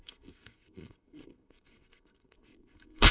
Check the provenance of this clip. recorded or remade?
remade